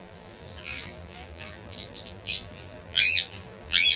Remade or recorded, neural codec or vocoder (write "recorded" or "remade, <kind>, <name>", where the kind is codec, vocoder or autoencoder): remade, vocoder, BigVGAN v2